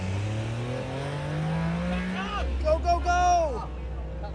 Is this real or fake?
real